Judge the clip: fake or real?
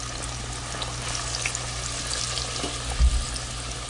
real